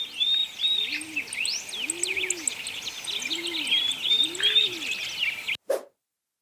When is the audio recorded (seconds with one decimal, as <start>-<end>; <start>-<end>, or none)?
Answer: 0.0-6.4